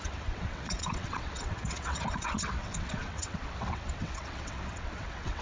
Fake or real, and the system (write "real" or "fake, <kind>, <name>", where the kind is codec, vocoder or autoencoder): fake, vocoder, WaveNeXt